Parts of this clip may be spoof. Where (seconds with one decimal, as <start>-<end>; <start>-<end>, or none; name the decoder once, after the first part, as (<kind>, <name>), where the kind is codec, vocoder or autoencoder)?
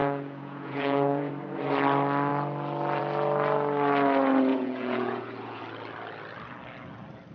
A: 0.0-1.3 (vocoder, Vocos); 4.5-5.6